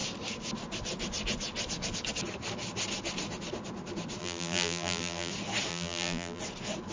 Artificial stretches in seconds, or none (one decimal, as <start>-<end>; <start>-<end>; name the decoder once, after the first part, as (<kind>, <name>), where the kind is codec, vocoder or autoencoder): 4.2-5.3 (vocoder, BigVGAN v2); 5.7-6.4